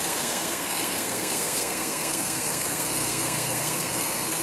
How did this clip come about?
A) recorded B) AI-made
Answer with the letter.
B